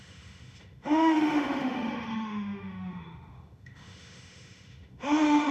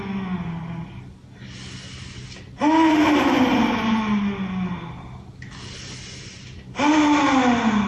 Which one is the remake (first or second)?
first